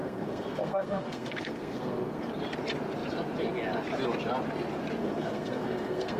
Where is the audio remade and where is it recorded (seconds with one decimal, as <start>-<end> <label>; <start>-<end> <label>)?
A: 0.0-2.3 remade; 2.3-5.0 recorded; 5.0-6.2 remade